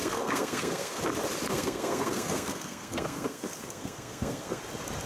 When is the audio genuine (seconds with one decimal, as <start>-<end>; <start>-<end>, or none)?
1.0-1.5; 4.6-5.1